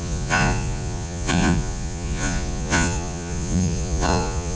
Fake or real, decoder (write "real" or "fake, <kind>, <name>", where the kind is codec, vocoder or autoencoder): fake, vocoder, Vocos